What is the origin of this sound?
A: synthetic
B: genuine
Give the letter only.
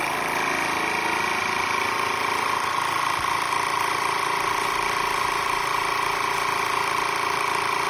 B